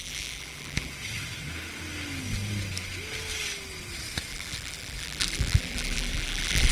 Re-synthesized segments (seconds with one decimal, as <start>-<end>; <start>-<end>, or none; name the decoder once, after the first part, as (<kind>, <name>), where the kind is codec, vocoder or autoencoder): 0.0-0.9 (vocoder, BigVGAN v2); 4.3-6.7